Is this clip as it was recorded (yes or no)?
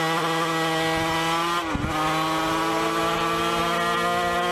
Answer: yes